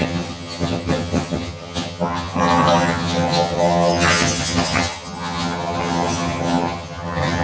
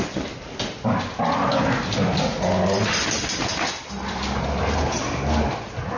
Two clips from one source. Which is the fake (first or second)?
first